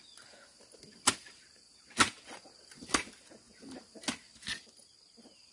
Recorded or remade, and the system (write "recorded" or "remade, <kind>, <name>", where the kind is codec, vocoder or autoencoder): recorded